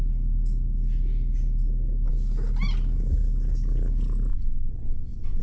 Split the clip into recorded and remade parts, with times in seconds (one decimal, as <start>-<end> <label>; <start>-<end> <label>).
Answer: 0.0-4.3 recorded; 4.3-5.4 remade